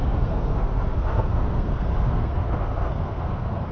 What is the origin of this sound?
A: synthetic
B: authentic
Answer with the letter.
A